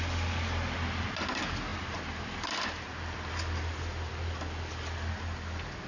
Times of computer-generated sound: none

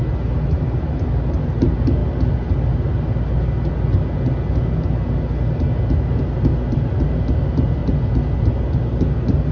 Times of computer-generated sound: none

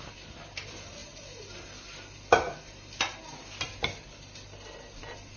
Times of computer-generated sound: none